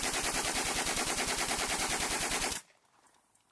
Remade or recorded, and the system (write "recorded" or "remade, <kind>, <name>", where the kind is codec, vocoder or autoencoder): remade, vocoder, BigVGAN v2